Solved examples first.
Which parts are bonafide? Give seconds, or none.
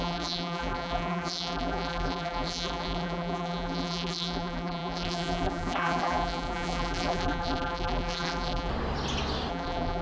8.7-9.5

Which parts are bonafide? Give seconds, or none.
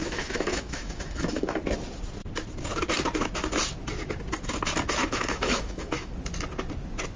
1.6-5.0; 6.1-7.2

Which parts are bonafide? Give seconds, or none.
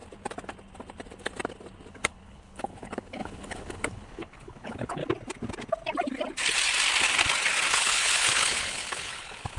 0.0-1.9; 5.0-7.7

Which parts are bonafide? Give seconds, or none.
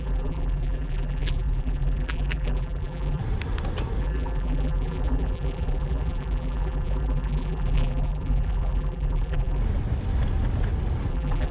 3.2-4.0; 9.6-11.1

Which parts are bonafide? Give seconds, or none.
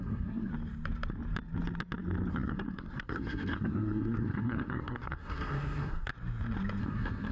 0.5-2.3; 6.1-6.8